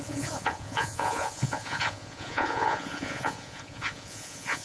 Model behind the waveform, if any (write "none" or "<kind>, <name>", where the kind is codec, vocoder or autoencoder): vocoder, Vocos